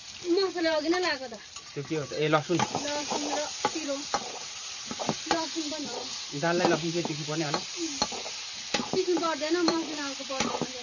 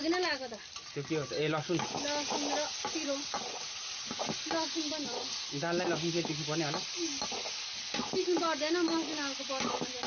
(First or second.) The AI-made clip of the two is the first